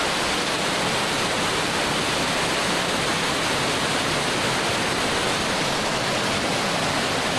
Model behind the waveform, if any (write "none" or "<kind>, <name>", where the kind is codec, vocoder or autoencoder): none